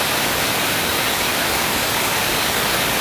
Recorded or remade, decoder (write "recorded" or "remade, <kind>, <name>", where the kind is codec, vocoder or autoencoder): remade, codec, DAC